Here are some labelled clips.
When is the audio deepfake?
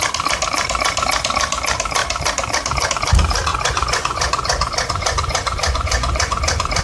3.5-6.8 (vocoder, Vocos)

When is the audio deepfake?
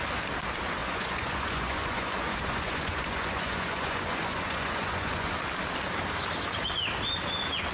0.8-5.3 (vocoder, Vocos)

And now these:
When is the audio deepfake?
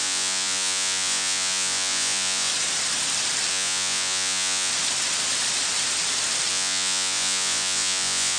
0.0-2.5 (vocoder, Vocos); 3.5-4.7; 6.5-8.4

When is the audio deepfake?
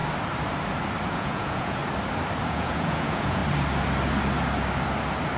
1.1-1.8 (vocoder, Vocos); 2.5-3.4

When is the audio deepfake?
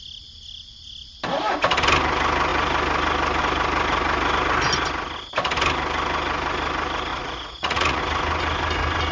7.1-8.0 (vocoder, Vocos)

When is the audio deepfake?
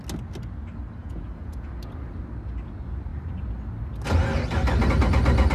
1.0-1.7 (vocoder, Vocos)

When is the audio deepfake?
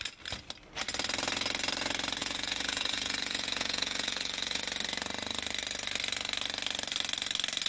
2.2-4.6 (vocoder, Vocos)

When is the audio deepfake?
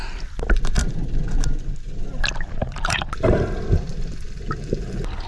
none